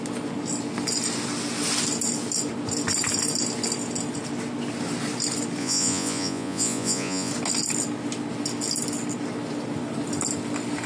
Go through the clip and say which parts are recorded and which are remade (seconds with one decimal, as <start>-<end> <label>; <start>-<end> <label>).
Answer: 0.0-5.6 recorded; 5.6-7.3 remade; 7.3-10.9 recorded